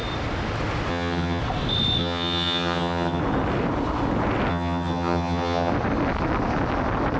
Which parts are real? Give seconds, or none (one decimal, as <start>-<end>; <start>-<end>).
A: 0.0-0.9; 1.4-2.0; 3.2-4.5; 5.7-7.2